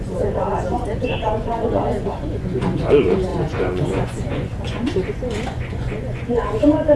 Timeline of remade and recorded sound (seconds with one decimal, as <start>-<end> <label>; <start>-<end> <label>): 0.0-7.0 remade